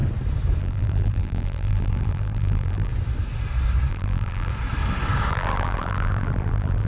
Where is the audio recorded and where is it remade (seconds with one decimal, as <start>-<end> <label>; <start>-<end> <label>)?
0.0-0.6 recorded; 0.6-2.9 remade; 2.9-3.9 recorded; 3.9-4.5 remade; 4.5-5.3 recorded; 5.3-6.9 remade